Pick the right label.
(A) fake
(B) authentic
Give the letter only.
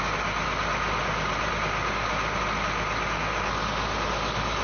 B